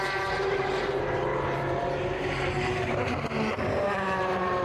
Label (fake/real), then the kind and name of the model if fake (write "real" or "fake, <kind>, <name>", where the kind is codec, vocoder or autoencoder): fake, vocoder, BigVGAN v2